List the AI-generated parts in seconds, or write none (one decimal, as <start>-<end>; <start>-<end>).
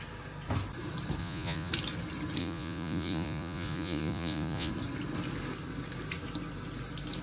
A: 1.2-1.7; 2.4-4.7